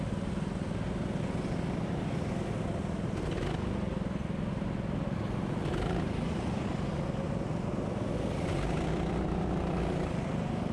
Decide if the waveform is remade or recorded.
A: recorded